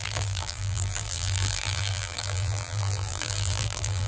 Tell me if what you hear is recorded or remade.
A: remade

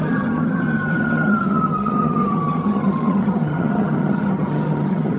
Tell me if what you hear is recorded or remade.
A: remade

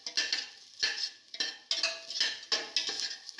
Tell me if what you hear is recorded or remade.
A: recorded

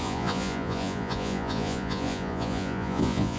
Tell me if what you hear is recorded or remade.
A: remade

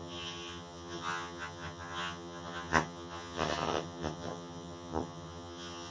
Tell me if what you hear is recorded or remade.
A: remade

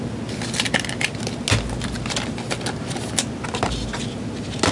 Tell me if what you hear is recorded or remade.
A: recorded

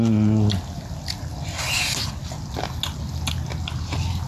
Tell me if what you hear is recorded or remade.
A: recorded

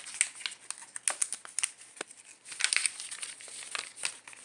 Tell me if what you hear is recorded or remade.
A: recorded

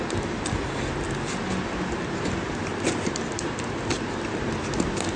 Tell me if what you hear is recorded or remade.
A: recorded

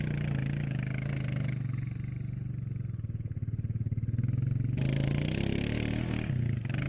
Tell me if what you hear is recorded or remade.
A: recorded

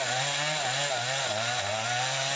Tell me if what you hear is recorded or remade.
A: recorded